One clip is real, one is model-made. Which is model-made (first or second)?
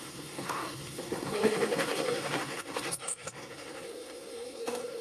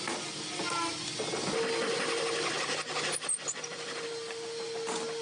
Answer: first